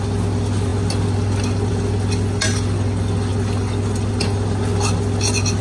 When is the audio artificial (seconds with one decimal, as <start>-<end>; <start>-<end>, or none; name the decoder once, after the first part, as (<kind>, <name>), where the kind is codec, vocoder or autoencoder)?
none